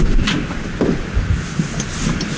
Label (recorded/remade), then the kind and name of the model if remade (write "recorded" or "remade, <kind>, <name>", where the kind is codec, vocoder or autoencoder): recorded